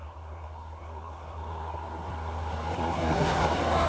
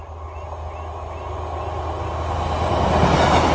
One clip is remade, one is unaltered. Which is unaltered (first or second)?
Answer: second